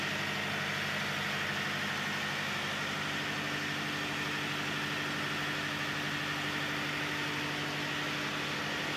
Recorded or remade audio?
recorded